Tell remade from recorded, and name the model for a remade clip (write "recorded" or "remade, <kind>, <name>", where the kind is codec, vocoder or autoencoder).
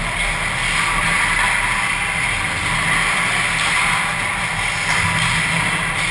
recorded